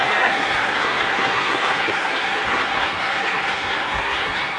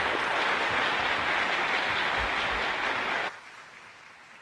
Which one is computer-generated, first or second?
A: first